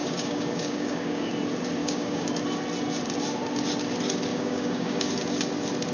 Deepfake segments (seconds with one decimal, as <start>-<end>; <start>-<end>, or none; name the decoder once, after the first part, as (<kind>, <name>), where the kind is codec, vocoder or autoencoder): 0.0-1.3 (codec, DAC); 1.8-2.3; 4.3-5.1